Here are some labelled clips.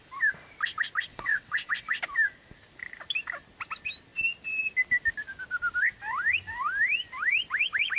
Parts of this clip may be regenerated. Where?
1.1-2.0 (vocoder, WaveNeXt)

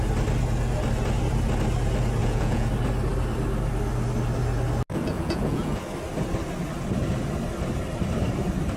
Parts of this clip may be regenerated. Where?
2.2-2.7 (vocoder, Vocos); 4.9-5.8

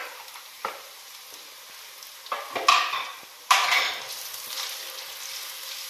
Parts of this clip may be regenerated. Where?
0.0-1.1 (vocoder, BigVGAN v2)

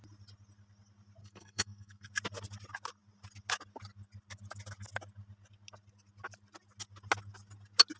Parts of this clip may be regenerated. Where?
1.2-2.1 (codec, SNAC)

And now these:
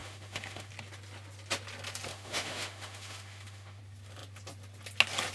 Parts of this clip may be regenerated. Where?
0.0-0.7 (autoencoder, DAC-VAE); 2.1-3.8